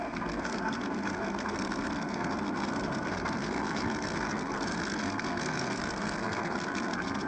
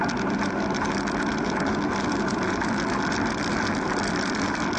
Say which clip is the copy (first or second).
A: first